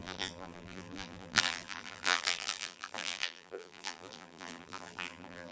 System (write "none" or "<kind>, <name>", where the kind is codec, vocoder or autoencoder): vocoder, BigVGAN v2